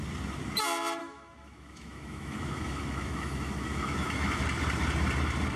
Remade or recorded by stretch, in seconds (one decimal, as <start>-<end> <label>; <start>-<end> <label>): 0.0-1.0 recorded; 1.0-4.4 remade; 4.4-5.6 recorded